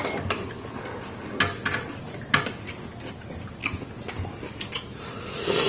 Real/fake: real